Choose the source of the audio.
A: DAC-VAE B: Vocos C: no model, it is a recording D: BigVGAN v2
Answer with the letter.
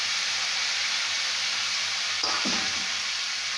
D